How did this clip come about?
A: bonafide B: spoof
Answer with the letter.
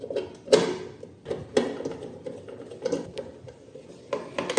A